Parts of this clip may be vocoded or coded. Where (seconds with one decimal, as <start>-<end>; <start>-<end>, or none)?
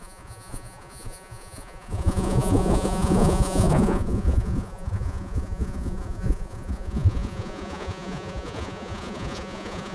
0.0-9.9